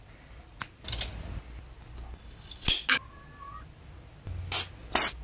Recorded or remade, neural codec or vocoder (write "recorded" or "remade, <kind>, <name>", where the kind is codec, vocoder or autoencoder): recorded